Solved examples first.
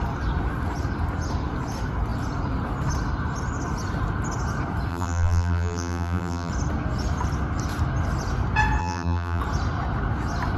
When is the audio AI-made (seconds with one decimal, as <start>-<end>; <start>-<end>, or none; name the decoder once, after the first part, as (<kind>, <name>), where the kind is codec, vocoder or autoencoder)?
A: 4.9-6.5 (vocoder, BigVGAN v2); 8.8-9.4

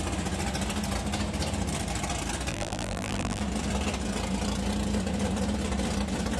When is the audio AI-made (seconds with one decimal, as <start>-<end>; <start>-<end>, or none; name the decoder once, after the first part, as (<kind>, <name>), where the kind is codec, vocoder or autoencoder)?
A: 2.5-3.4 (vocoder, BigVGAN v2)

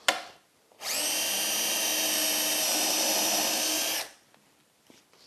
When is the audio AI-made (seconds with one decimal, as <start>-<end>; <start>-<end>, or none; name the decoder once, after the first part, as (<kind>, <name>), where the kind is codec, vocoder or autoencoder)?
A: none

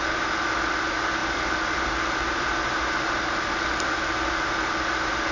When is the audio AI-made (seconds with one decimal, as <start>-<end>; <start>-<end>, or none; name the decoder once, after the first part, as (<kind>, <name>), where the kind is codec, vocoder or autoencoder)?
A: 1.2-2.6 (vocoder, BigVGAN v2)

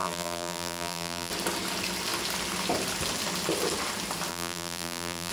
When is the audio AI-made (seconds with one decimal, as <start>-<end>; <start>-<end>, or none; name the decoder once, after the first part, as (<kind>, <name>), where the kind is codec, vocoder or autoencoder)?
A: 0.0-1.3 (vocoder, BigVGAN v2); 4.3-5.3